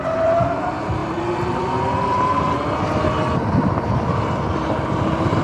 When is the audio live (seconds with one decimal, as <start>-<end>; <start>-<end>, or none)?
0.0-5.4